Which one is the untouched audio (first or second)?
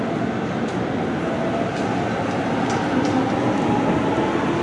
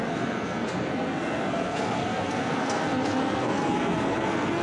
first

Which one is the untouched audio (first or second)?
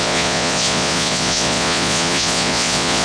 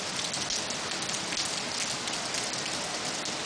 second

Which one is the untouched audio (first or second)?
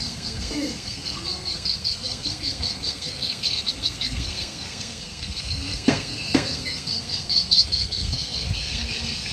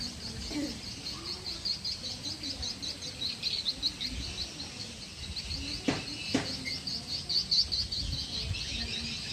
second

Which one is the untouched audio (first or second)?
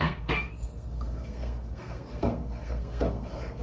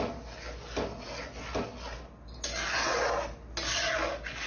second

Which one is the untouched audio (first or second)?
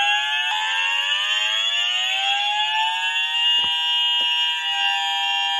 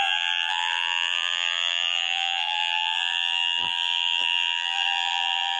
first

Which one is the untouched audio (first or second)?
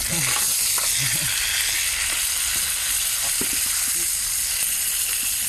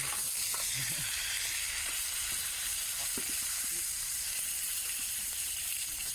first